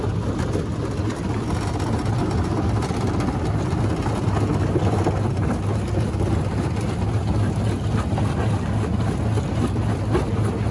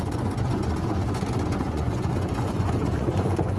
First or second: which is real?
first